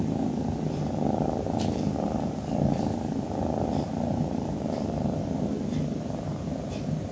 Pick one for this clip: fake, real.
fake